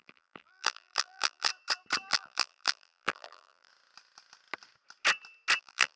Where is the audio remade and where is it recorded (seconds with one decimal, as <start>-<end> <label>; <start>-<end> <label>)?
0.0-1.5 remade; 1.5-2.1 recorded; 2.1-3.7 remade; 3.7-5.6 recorded; 5.6-6.0 remade